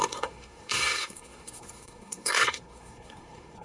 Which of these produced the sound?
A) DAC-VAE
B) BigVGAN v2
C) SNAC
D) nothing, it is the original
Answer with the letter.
C